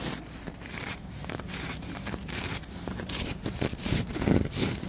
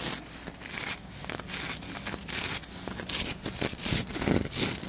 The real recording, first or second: second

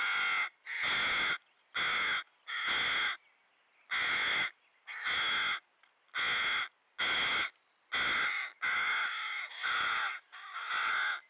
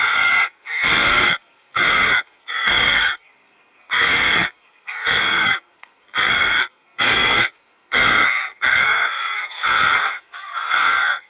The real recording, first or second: first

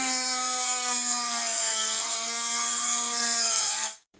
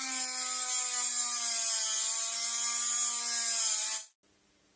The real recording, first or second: second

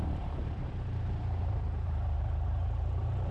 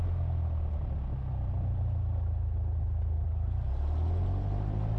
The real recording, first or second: second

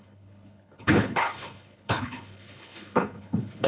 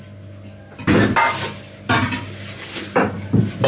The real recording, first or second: second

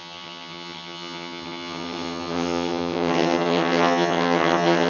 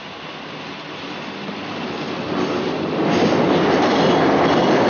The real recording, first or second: second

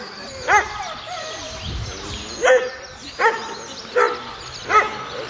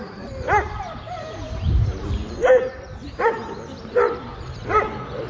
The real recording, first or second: first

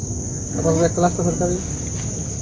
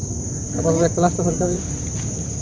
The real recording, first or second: first